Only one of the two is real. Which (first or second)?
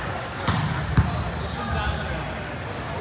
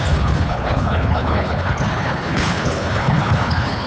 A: first